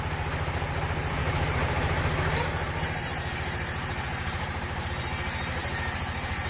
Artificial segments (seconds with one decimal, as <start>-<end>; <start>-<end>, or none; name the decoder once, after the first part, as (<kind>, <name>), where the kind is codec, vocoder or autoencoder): 1.2-4.9 (vocoder, BigVGAN v2)